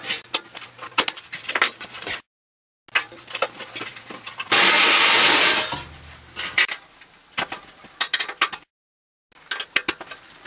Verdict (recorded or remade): recorded